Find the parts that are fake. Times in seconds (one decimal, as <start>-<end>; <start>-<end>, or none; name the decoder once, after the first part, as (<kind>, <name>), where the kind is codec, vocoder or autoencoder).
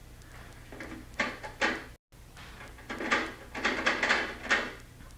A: none